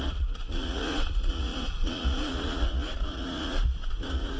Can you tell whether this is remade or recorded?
remade